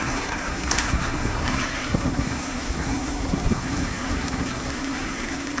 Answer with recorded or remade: remade